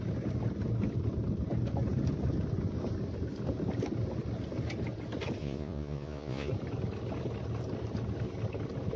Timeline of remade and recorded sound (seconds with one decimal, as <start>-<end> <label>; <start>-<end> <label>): 0.0-5.4 recorded; 5.4-6.5 remade; 6.5-9.0 recorded